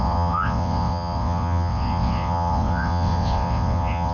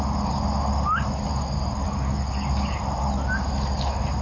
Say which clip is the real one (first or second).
second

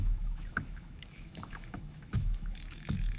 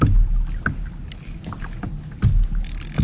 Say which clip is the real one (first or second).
second